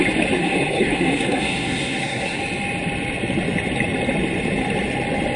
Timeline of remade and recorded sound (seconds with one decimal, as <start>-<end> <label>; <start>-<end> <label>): 0.0-0.4 recorded; 0.4-2.4 remade; 2.4-5.4 recorded